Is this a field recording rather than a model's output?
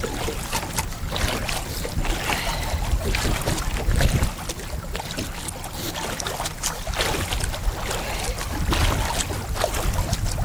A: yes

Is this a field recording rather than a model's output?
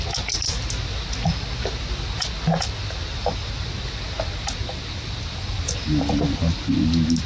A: yes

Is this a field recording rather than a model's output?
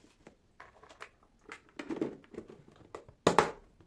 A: yes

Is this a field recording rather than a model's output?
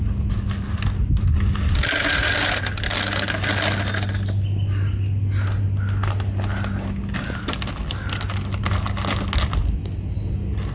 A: yes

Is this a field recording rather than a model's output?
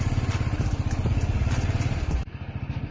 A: yes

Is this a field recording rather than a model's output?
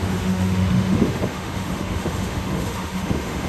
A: no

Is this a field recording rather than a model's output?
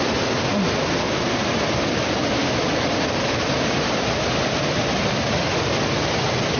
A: yes